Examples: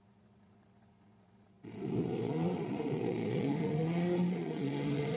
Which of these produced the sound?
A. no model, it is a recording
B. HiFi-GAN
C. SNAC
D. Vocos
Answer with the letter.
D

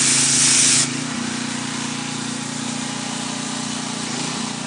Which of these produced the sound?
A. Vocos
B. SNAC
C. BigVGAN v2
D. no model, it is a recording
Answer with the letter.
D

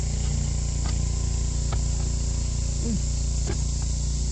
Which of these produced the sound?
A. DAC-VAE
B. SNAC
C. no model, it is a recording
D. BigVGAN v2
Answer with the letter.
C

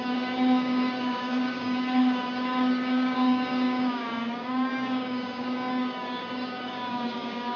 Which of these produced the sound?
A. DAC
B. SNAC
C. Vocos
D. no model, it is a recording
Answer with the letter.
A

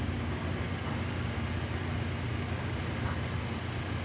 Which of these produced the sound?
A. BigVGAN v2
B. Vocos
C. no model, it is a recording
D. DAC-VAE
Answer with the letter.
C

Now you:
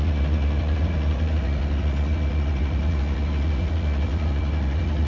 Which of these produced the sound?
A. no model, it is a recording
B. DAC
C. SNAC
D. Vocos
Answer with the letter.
D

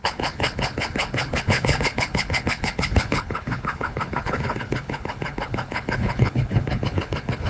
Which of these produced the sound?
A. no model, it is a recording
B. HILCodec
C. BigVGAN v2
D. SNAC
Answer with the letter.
B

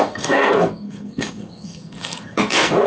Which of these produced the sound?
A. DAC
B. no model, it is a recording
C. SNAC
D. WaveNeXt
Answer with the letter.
C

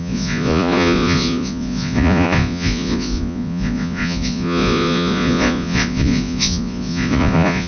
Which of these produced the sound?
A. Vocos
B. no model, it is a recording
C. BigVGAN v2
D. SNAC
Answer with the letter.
A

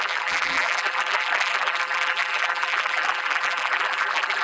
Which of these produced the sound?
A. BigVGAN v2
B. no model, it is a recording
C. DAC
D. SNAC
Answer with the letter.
A